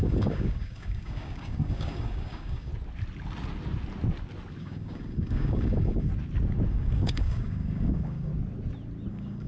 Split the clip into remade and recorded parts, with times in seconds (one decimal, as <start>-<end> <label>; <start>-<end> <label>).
0.0-2.7 remade; 2.7-4.6 recorded; 4.6-6.1 remade; 6.1-6.7 recorded; 6.7-8.3 remade; 8.3-9.1 recorded; 9.1-9.5 remade